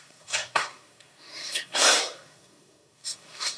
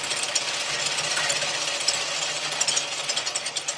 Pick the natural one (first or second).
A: second